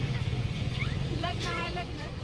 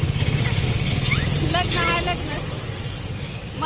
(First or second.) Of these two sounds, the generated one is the first